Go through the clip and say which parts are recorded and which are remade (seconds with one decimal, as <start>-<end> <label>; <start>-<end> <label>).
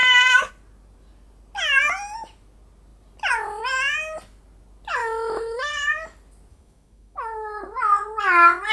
0.0-0.5 remade; 0.5-5.0 recorded; 5.0-5.7 remade; 5.7-6.5 recorded; 6.5-7.8 remade; 7.8-8.7 recorded